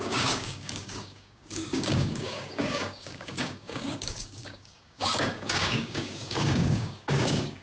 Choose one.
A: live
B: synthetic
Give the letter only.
B